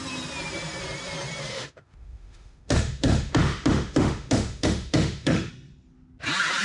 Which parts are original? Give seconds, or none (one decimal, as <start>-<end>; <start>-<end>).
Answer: 0.0-1.5; 5.5-6.6